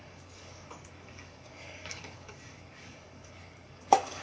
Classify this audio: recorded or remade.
remade